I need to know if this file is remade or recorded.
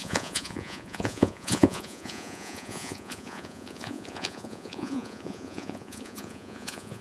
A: remade